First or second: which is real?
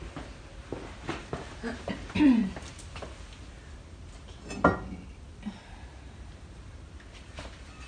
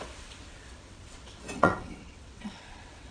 first